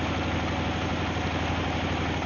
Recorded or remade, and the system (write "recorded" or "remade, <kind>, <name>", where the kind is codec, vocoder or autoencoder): recorded